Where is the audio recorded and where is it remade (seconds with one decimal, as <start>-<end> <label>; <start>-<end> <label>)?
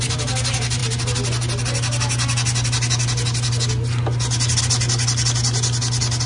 0.0-6.3 recorded